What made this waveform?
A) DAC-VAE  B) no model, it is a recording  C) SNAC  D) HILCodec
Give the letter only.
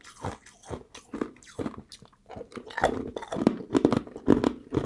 B